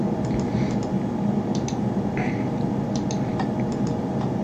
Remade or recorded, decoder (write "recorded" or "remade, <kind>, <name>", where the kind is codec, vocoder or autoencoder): recorded